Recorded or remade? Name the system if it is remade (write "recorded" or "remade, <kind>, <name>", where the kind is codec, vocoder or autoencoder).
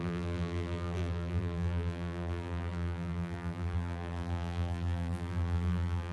remade, vocoder, BigVGAN v2